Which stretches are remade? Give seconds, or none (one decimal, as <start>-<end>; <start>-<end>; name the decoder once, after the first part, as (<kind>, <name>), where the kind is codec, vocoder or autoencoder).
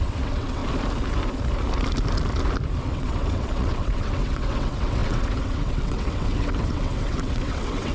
0.0-0.6 (vocoder, WaveNeXt); 2.8-7.9